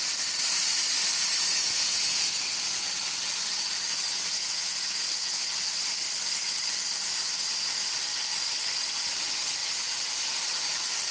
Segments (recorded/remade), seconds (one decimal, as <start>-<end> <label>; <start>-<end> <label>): 0.0-1.5 recorded; 1.5-2.4 remade; 2.4-4.4 recorded; 4.4-5.4 remade; 5.4-11.1 recorded